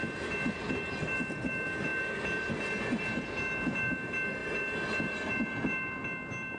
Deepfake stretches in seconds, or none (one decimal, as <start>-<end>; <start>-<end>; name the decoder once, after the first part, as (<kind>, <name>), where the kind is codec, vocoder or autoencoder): none